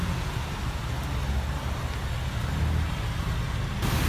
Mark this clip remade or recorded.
recorded